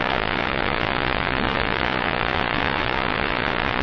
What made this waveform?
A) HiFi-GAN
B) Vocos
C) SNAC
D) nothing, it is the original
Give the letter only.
B